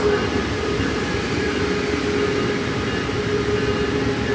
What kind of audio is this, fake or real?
real